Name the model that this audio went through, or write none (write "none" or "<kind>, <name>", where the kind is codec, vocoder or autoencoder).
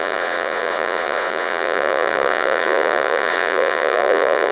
vocoder, Vocos